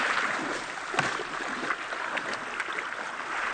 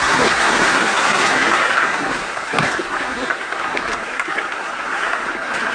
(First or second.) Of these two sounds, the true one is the first